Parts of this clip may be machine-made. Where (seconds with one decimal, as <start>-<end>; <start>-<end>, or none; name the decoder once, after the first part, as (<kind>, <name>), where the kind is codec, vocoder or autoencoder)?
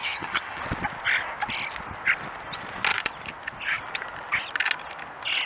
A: 0.0-0.6 (vocoder, HiFi-GAN)